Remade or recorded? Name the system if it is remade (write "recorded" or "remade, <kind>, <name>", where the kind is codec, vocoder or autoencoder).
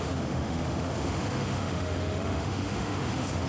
remade, autoencoder, DAC-VAE